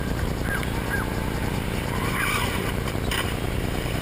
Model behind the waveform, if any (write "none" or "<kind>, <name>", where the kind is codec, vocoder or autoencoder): vocoder, BigVGAN v2